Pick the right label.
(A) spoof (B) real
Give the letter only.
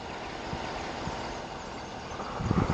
B